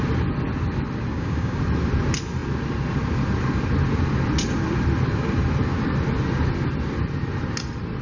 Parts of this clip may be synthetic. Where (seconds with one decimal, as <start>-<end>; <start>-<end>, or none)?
1.1-1.6